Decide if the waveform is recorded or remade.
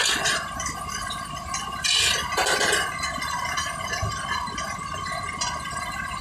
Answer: recorded